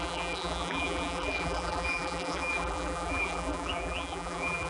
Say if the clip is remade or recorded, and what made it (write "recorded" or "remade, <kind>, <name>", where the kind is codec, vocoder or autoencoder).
remade, vocoder, BigVGAN v2